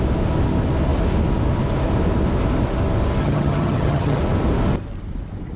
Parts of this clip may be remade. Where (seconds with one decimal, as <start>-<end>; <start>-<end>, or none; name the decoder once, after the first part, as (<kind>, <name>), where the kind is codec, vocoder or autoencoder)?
3.2-4.2 (vocoder, HiFi-GAN)